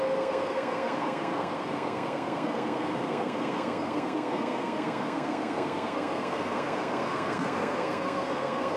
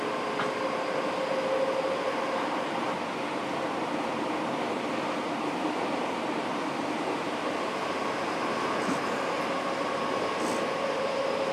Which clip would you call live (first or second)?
second